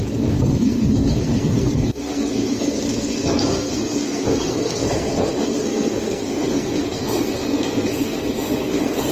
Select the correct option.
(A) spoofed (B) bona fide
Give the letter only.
A